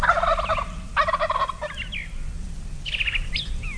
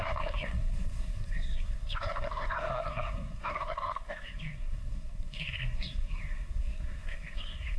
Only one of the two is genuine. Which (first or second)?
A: first